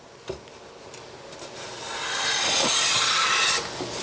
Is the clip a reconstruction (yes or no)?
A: no